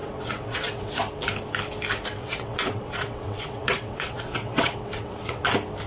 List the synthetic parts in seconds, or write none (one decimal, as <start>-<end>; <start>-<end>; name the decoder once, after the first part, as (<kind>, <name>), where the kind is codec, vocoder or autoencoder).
0.0-0.9 (vocoder, WaveNeXt); 2.2-5.4